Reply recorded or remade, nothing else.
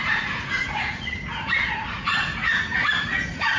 remade